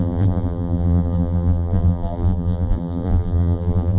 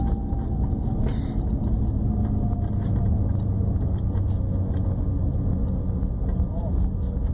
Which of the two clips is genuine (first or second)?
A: second